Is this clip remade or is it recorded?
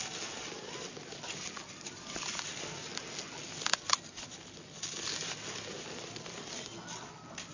recorded